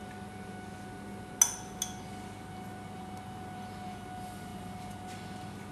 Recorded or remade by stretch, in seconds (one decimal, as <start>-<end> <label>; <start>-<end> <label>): 0.0-5.7 recorded